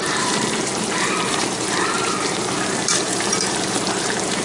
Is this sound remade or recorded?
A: remade